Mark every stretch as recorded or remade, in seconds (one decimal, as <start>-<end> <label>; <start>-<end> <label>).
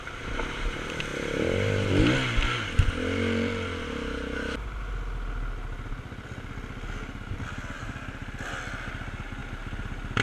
0.0-10.2 recorded